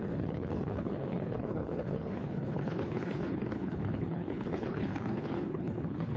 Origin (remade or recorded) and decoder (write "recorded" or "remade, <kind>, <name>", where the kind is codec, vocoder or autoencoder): remade, codec, HILCodec